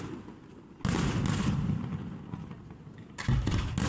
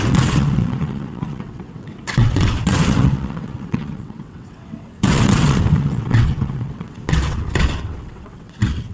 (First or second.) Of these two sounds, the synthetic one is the second